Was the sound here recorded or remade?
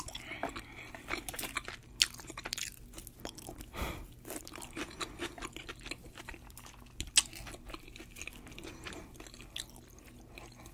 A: recorded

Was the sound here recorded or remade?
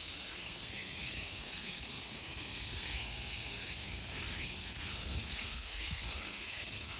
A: remade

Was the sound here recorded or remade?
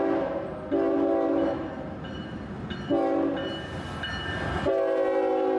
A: recorded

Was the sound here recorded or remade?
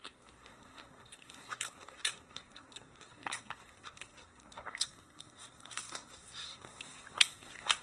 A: remade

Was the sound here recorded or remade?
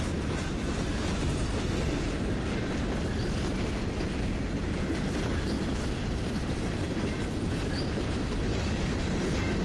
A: recorded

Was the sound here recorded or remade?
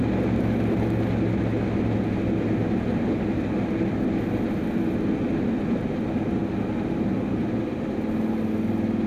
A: recorded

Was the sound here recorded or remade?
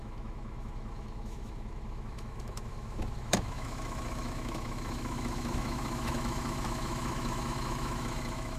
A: remade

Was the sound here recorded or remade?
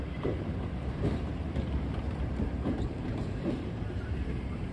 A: remade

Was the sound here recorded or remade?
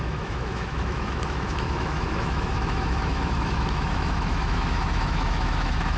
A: remade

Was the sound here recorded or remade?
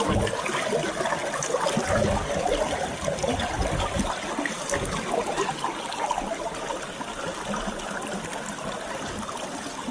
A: recorded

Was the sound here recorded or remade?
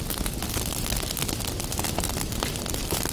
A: recorded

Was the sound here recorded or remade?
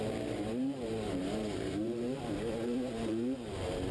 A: remade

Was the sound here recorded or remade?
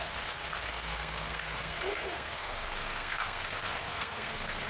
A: remade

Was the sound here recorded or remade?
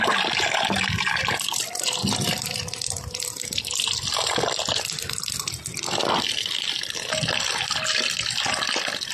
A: recorded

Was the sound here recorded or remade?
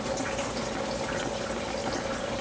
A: recorded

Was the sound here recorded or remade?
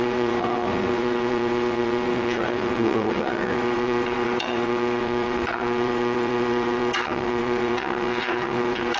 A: remade